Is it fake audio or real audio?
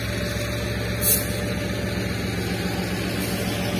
real